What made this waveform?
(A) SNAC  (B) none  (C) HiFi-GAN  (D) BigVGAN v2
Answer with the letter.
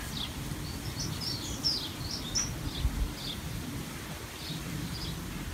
B